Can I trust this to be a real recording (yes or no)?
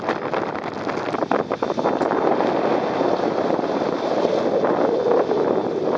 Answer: yes